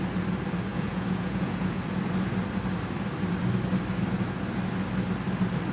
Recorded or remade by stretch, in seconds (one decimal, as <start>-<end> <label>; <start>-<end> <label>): 0.0-0.7 recorded; 0.7-1.8 remade; 1.8-5.7 recorded